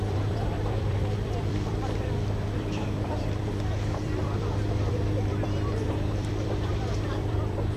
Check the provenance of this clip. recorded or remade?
remade